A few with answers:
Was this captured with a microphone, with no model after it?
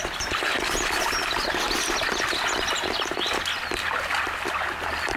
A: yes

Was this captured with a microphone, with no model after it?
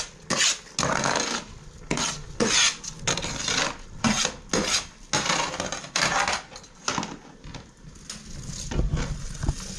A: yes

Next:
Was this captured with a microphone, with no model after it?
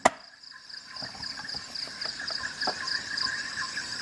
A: no